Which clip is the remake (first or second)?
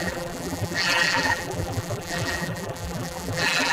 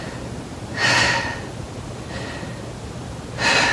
first